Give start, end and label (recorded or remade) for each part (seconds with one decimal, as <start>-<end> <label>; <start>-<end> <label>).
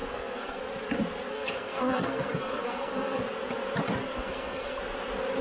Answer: 0.0-0.6 remade; 0.6-1.3 recorded; 1.3-3.2 remade; 3.2-4.0 recorded; 4.0-4.8 remade; 4.8-5.4 recorded